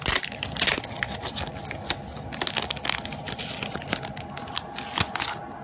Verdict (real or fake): real